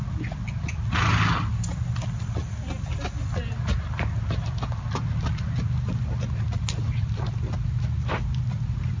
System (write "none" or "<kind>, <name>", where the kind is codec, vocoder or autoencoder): none